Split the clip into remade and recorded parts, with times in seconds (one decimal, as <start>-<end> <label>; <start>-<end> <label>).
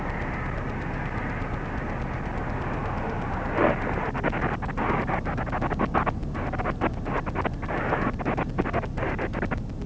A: 0.0-9.9 recorded